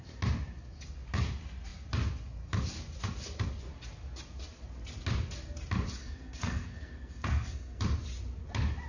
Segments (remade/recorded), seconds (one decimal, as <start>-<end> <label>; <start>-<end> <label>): 0.0-6.0 recorded; 6.0-7.8 remade; 7.8-8.9 recorded